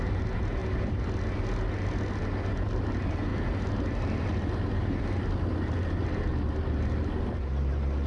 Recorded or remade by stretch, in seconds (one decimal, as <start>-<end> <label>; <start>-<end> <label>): 0.0-8.1 recorded